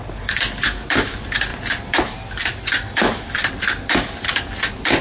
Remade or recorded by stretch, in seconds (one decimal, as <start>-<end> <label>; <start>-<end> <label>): 0.0-1.5 recorded; 1.5-2.0 remade; 2.0-5.0 recorded